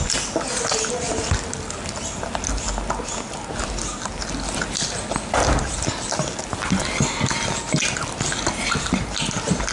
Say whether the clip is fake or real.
real